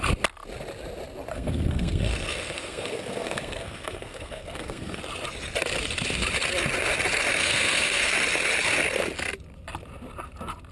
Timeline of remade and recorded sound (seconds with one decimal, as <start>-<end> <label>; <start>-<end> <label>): 0.0-1.3 recorded; 1.3-5.0 remade; 5.0-7.3 recorded; 7.3-8.1 remade; 8.1-10.7 recorded